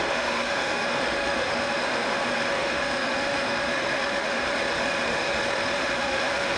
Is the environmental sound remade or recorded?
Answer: remade